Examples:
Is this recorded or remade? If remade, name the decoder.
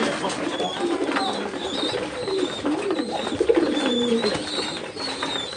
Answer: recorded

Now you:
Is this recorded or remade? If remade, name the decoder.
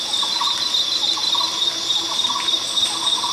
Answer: recorded